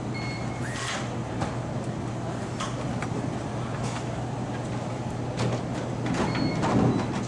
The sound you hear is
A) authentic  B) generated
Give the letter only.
A